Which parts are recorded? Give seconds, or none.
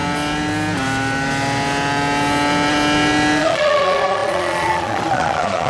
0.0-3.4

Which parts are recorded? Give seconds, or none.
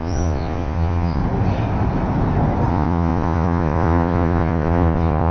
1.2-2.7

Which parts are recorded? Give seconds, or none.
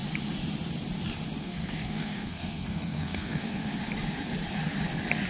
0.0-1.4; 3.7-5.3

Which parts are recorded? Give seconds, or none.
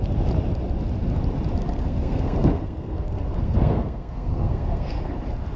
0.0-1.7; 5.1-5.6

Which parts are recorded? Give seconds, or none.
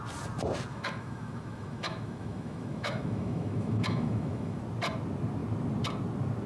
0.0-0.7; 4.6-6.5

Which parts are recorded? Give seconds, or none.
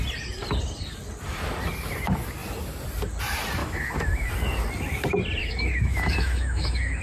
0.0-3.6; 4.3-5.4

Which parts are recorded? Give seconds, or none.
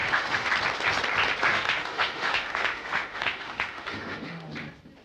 0.5-1.5; 4.5-5.0